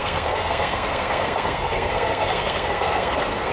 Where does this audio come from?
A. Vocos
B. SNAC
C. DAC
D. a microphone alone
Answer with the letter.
B